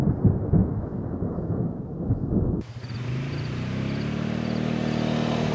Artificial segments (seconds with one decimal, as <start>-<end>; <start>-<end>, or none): 0.6-2.7